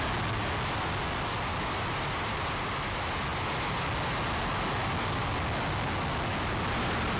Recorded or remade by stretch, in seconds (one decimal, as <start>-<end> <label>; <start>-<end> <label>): 0.0-7.2 recorded